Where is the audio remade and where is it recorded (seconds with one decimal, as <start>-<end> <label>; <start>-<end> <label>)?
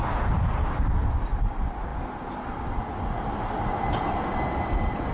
0.0-5.1 recorded